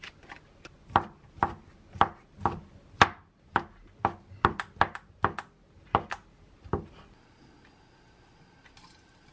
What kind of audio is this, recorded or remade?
recorded